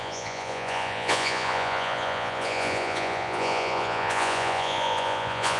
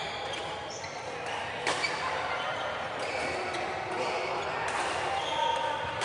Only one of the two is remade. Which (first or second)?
first